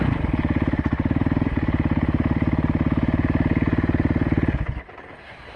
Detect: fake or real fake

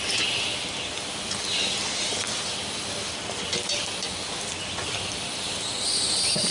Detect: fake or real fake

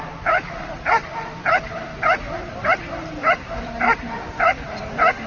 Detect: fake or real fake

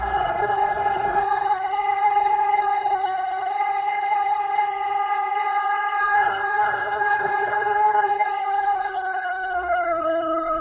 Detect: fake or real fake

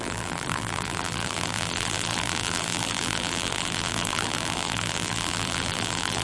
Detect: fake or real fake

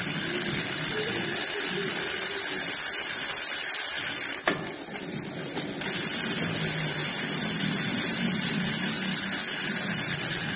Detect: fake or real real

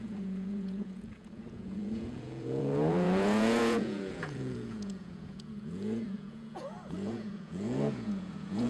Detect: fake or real fake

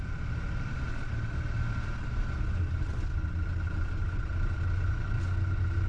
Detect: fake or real real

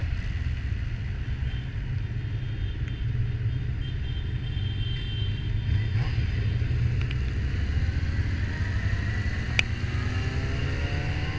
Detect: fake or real real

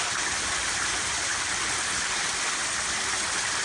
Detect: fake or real real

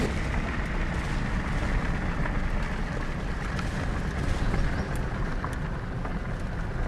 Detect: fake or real real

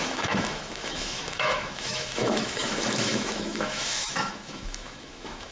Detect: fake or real fake